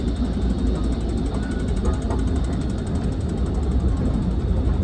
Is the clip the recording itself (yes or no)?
yes